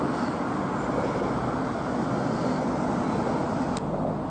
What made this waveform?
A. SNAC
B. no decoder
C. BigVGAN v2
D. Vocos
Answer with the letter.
B